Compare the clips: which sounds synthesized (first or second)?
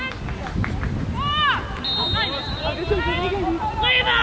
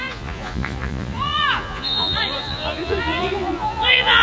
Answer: second